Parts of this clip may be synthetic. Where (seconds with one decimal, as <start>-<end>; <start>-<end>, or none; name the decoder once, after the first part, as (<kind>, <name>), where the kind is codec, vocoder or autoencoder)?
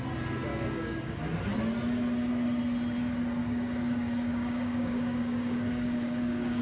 0.5-1.2 (codec, DAC); 3.4-6.6